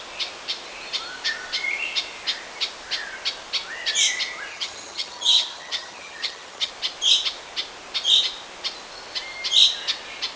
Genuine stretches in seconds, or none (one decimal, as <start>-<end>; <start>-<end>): 0.0-4.5; 6.7-10.4